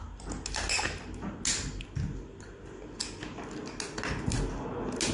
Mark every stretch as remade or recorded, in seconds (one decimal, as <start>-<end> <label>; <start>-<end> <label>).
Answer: 0.0-5.1 recorded